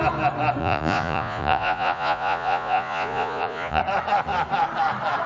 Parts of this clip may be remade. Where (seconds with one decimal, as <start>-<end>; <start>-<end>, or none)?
0.6-3.8